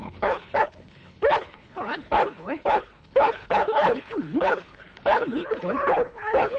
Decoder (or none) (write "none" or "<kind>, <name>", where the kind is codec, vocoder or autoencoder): codec, HILCodec